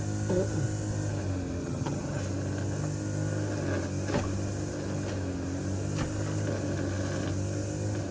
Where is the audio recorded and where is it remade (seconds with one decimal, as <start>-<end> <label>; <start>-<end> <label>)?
0.0-1.6 recorded; 1.6-2.2 remade; 2.2-8.1 recorded